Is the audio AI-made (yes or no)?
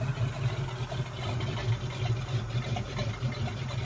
no